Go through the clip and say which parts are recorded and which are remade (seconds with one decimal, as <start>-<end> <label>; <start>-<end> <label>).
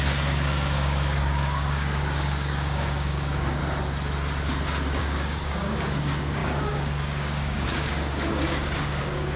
0.0-3.6 remade; 3.6-5.0 recorded; 5.0-9.4 remade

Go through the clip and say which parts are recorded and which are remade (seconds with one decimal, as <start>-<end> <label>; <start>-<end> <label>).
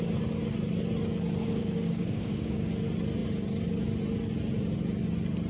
0.0-1.4 recorded; 1.4-2.7 remade; 2.7-5.5 recorded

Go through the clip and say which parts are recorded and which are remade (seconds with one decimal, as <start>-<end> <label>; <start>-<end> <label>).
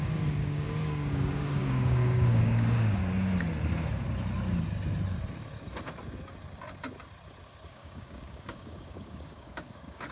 0.0-3.0 remade; 3.0-7.7 recorded; 7.7-10.1 remade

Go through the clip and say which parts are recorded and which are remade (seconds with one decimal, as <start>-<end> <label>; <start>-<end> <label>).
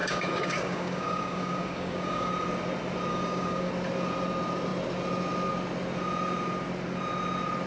0.0-2.3 remade; 2.3-3.1 recorded; 3.1-3.7 remade; 3.7-7.7 recorded